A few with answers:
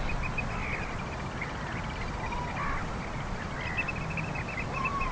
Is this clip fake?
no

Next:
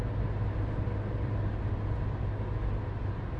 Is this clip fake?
no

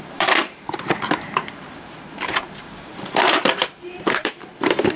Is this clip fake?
yes